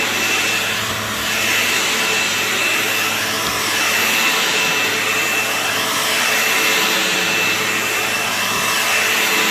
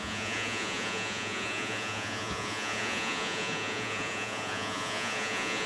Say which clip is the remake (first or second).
second